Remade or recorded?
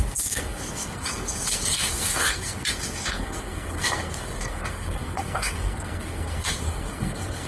remade